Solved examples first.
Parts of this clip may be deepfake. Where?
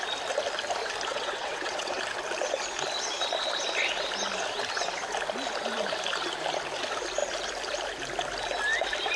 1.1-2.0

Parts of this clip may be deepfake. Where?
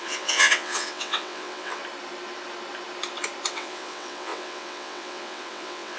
0.0-1.8; 3.5-6.0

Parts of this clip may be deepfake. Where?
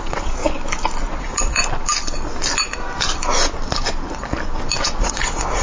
0.0-0.4; 1.2-1.6; 5.0-5.6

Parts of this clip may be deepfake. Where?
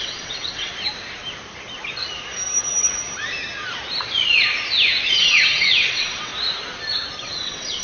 0.0-0.7; 5.1-6.3; 7.2-7.8